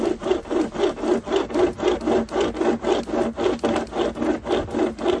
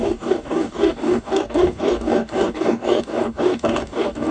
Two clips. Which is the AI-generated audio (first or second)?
second